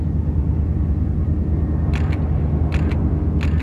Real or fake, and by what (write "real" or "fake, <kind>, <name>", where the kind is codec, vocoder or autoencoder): real